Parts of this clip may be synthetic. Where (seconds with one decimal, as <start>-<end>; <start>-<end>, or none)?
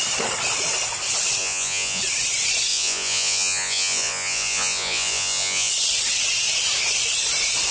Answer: 1.4-2.0; 2.7-5.7